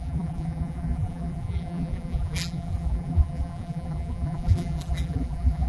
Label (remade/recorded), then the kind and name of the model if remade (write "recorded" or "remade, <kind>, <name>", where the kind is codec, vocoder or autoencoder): remade, vocoder, BigVGAN v2